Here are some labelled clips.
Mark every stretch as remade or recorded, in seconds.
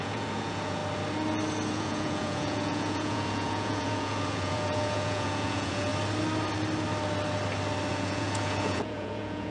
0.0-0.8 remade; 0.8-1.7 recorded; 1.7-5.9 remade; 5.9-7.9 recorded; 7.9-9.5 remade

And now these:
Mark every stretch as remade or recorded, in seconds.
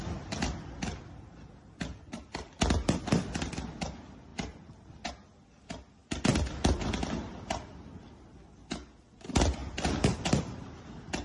0.0-11.2 recorded